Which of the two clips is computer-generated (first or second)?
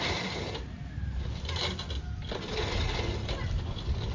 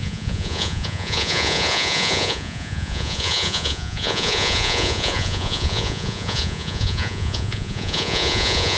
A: second